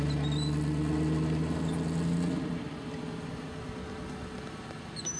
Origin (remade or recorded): recorded